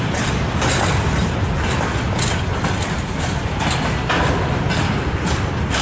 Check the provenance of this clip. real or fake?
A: real